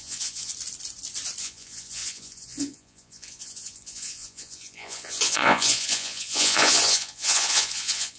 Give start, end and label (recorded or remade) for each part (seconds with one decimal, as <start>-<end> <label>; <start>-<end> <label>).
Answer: 0.0-0.5 remade; 0.5-1.4 recorded; 1.4-8.2 remade